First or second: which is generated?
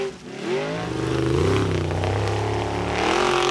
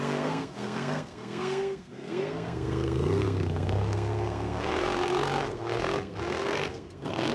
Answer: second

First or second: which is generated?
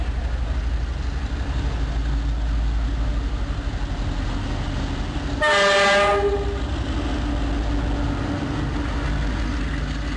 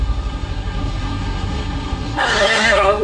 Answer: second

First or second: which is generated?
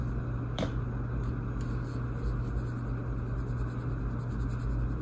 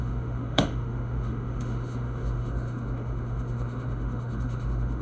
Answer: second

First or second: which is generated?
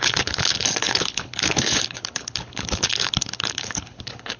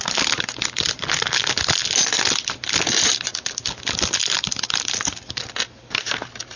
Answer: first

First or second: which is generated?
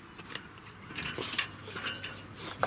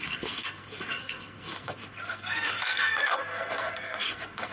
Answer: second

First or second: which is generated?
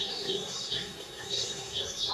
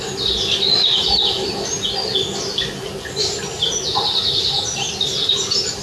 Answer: first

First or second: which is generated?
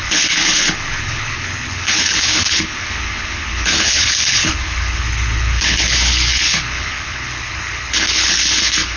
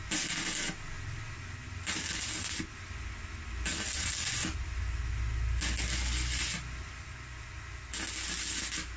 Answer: first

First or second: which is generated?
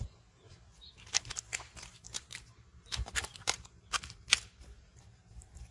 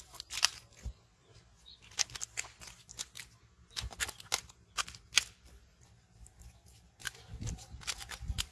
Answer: first